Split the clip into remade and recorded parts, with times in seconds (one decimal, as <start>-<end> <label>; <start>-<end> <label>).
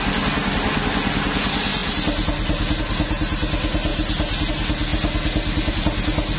0.0-6.4 recorded